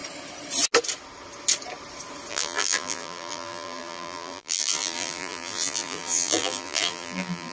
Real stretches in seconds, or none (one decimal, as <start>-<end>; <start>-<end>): 0.0-2.3